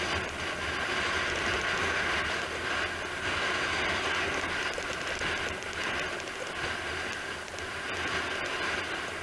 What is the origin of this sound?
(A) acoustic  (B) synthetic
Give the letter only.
A